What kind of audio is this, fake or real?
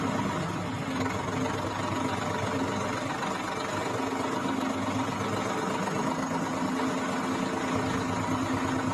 real